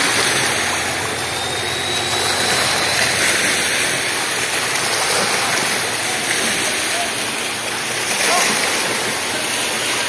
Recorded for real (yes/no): yes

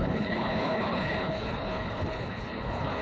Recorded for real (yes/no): no